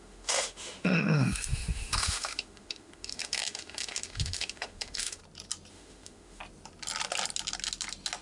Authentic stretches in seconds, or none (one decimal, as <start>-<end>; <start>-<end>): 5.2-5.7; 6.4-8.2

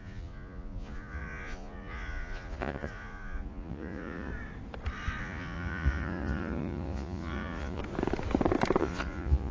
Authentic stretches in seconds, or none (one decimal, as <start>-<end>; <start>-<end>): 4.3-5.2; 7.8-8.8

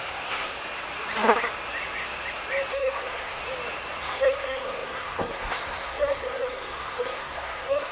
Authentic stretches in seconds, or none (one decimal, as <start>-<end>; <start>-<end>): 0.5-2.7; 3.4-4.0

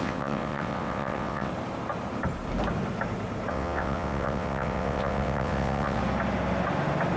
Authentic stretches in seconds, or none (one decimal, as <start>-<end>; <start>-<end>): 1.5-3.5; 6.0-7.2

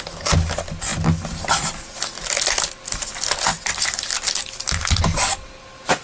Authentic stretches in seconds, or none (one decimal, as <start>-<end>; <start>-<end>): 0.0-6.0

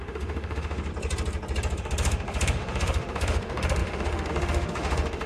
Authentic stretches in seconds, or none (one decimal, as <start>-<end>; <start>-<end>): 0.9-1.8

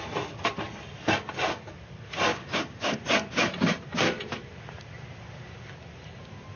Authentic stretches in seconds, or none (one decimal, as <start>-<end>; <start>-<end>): 0.0-2.3; 3.0-6.6